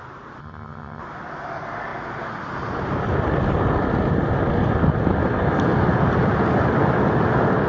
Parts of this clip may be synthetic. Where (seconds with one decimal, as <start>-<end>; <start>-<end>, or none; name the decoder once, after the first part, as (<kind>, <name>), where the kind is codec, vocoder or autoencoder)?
0.4-1.0 (vocoder, HiFi-GAN)